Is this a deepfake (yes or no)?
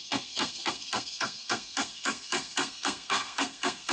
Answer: yes